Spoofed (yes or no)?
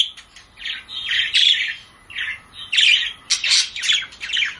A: no